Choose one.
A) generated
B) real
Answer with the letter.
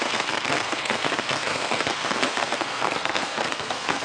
A